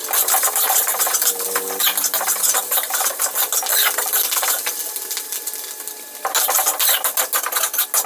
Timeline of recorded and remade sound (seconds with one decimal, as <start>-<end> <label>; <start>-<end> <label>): 0.0-8.1 recorded